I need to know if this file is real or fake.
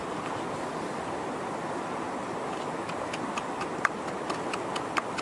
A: real